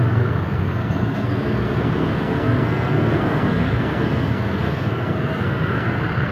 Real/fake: fake